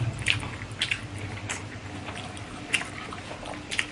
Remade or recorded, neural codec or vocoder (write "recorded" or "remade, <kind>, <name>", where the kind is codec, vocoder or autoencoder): remade, vocoder, BigVGAN v2